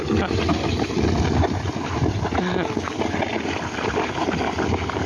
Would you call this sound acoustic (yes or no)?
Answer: yes